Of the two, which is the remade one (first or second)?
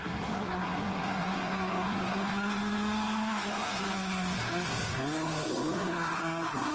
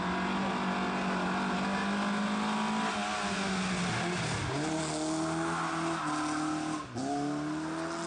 first